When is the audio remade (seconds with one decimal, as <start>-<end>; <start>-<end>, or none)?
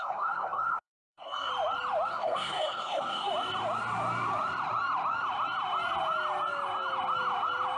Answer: 0.0-1.5; 2.1-3.3